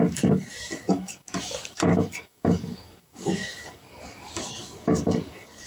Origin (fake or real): fake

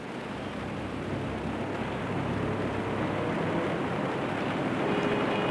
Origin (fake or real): real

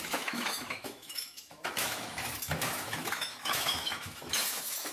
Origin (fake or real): fake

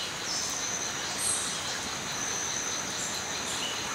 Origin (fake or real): real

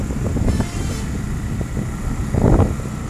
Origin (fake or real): real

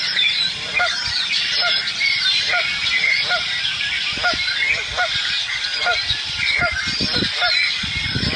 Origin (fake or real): real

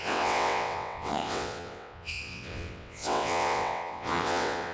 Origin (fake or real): fake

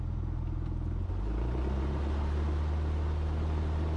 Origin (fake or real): real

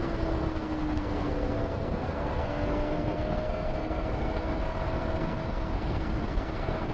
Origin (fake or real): fake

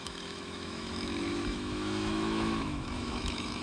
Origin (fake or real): fake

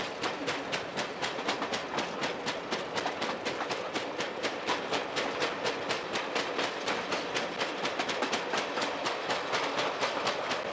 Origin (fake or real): real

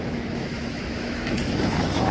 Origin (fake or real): fake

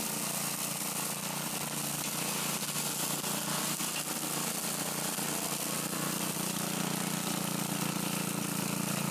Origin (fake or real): real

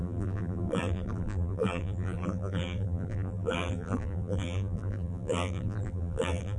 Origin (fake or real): fake